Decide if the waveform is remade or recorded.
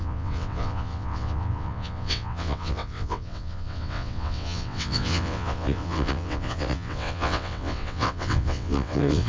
remade